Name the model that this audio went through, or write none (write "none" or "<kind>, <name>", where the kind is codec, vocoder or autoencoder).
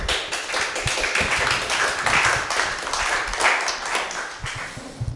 none